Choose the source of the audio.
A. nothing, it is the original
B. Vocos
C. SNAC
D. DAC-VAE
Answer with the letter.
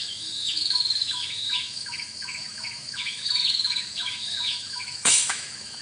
D